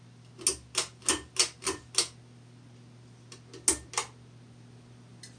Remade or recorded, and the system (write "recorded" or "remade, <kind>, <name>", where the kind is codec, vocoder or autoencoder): recorded